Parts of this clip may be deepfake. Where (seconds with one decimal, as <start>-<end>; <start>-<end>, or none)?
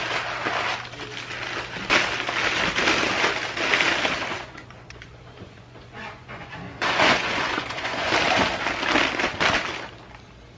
4.3-8.1